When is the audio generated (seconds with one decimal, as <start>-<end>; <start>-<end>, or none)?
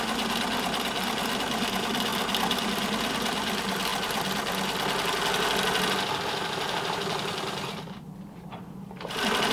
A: 0.0-3.9; 6.2-9.5